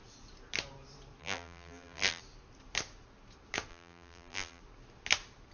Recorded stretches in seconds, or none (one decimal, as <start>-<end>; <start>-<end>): 0.0-1.2; 2.2-3.7; 4.6-5.5